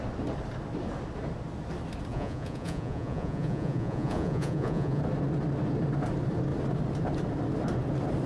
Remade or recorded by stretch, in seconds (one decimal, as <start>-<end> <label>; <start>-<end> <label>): 0.0-2.1 recorded; 2.1-5.0 remade; 5.0-8.3 recorded